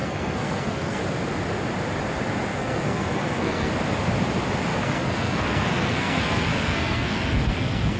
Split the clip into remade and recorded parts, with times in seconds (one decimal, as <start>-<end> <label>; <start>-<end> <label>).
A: 0.0-1.0 remade; 1.0-2.5 recorded; 2.5-3.7 remade; 3.7-4.7 recorded; 4.7-8.0 remade